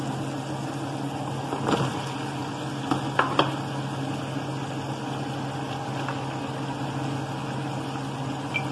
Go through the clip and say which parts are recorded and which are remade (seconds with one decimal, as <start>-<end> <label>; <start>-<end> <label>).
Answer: 0.0-8.7 recorded